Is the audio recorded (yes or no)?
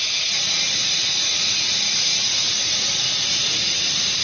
no